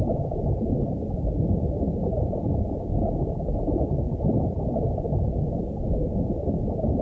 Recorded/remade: recorded